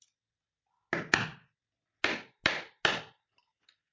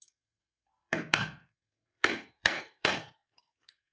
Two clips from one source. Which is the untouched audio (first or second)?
first